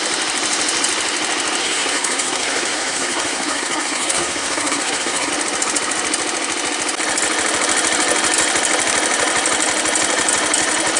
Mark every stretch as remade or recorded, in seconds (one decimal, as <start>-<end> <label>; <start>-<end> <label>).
0.0-1.6 recorded; 1.6-5.3 remade; 5.3-11.0 recorded